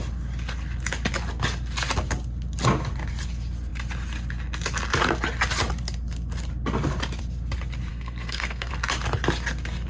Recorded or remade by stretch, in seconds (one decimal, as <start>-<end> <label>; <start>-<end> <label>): 0.0-7.9 recorded; 7.9-8.7 remade; 8.7-9.9 recorded